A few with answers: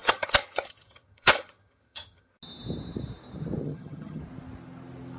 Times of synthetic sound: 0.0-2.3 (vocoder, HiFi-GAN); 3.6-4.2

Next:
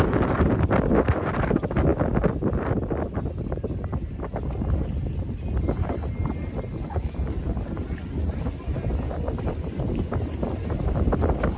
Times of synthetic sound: none

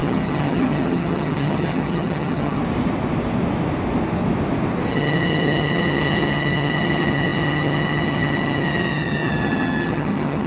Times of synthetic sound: 0.0-2.6 (vocoder, HiFi-GAN); 4.9-10.5

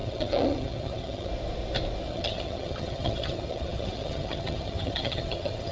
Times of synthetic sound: 0.0-1.3 (vocoder, HiFi-GAN); 2.1-5.7

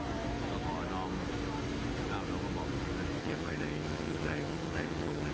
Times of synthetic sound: 3.2-5.3 (vocoder, HiFi-GAN)

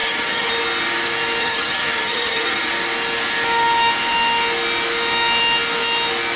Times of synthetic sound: 0.0-0.5 (vocoder, HiFi-GAN); 1.4-2.7